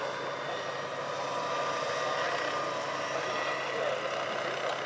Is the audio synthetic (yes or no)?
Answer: no